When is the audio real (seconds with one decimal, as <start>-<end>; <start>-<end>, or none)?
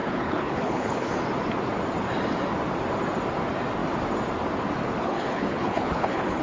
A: 1.1-5.0